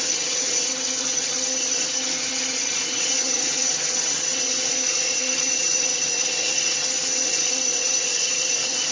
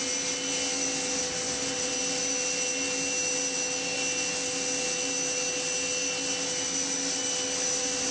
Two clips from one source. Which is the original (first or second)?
second